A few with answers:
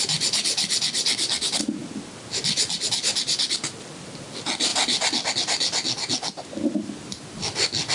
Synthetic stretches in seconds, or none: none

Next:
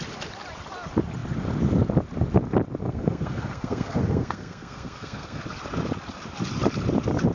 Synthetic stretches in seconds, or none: 2.8-5.4

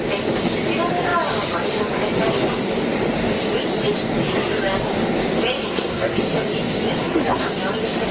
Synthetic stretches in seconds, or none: 5.6-6.2; 7.0-7.5